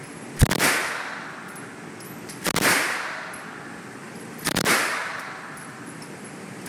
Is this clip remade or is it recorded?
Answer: recorded